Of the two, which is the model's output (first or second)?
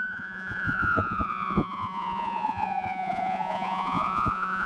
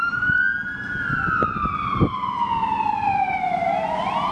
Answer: first